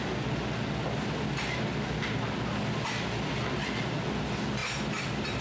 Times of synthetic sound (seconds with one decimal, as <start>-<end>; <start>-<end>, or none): 4.6-5.4